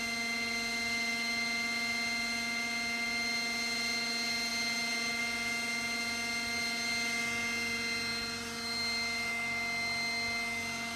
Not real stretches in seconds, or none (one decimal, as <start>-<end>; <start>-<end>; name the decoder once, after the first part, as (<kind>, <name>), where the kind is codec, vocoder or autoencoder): 4.5-5.2 (vocoder, BigVGAN v2); 8.1-9.3

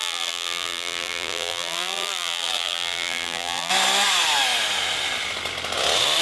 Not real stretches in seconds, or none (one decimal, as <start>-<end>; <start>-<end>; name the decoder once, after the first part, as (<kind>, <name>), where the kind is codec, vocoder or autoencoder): 0.0-3.7 (vocoder, BigVGAN v2)

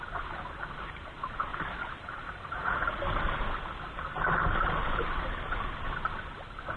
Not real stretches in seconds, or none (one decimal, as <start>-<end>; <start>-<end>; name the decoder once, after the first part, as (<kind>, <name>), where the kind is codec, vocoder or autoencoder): 1.5-3.4 (vocoder, BigVGAN v2)

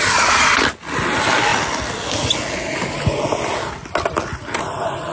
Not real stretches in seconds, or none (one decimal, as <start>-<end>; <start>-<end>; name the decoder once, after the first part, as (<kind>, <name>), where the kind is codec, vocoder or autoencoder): none

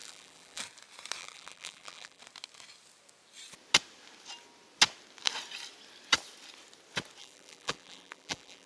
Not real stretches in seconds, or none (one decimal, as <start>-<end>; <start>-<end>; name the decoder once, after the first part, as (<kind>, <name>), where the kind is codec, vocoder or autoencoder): 0.0-0.6 (vocoder, BigVGAN v2); 1.2-2.2; 7.2-8.7